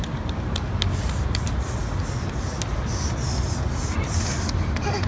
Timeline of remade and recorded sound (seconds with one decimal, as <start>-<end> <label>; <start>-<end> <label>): 0.0-5.1 recorded